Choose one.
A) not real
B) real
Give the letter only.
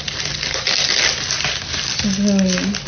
B